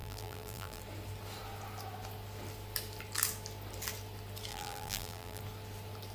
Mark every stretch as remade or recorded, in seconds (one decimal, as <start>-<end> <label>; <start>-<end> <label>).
0.0-0.8 remade; 0.8-4.5 recorded; 4.5-5.4 remade; 5.4-6.1 recorded

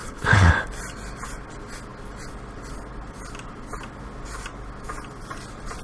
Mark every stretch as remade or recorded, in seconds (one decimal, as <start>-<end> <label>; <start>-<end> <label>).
0.0-0.5 remade; 0.5-5.8 recorded

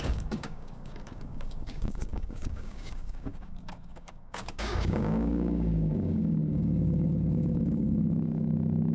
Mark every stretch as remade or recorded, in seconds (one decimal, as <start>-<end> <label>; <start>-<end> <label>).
0.0-8.9 remade

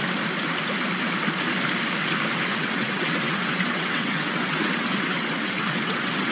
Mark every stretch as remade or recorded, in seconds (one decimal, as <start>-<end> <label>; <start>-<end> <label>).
0.0-2.5 recorded; 2.5-6.3 remade

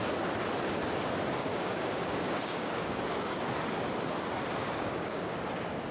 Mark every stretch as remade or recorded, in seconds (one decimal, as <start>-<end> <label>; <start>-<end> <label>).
0.0-1.4 recorded; 1.4-3.4 remade; 3.4-4.6 recorded; 4.6-5.3 remade; 5.3-5.9 recorded

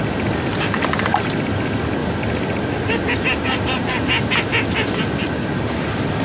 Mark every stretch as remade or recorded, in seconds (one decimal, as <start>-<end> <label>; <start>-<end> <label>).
0.0-6.2 recorded